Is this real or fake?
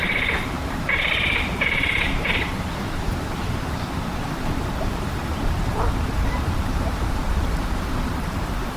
fake